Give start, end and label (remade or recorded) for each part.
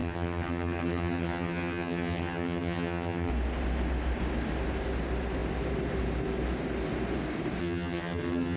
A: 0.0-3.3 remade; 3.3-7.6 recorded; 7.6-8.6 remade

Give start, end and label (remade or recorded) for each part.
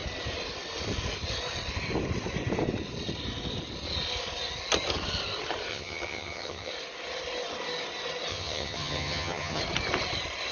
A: 0.0-5.7 recorded; 5.7-6.7 remade; 6.7-8.3 recorded; 8.3-9.6 remade; 9.6-10.5 recorded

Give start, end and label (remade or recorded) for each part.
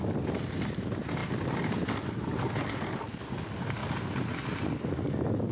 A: 0.0-5.5 recorded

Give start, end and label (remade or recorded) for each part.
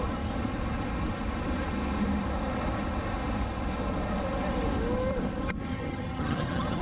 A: 0.0-5.7 recorded; 5.7-6.8 remade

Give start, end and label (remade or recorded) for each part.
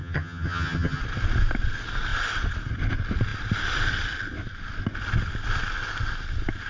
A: 0.0-1.0 remade; 1.0-6.7 recorded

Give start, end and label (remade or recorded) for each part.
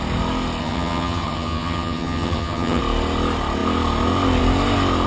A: 0.0-0.6 recorded; 0.6-2.8 remade; 2.8-5.1 recorded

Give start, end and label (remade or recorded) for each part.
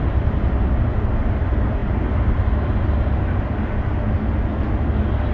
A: 0.0-5.3 recorded